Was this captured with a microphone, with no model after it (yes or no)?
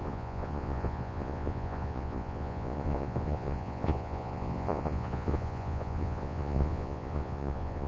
no